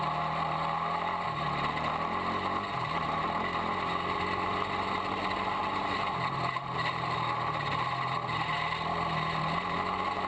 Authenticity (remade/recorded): recorded